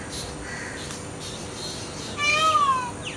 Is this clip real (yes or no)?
yes